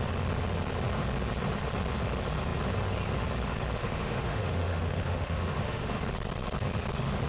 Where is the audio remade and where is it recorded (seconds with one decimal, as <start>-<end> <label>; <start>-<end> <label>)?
0.0-3.8 recorded; 3.8-6.0 remade; 6.0-7.3 recorded